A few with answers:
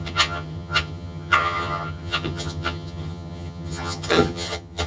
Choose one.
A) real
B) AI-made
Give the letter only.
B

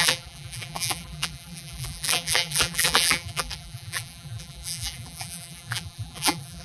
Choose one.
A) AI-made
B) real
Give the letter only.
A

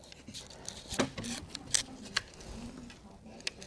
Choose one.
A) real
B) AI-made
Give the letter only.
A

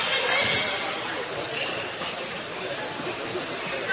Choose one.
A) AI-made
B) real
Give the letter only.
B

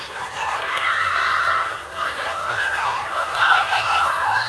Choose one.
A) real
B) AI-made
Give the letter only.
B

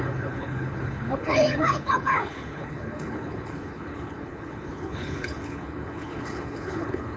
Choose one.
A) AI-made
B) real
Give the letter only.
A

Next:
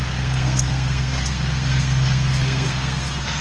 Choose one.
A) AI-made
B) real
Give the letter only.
A